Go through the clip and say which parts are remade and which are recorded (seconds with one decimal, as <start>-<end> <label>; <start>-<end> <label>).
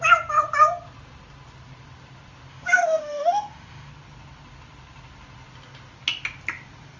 0.0-2.5 recorded; 2.5-3.9 remade; 3.9-7.0 recorded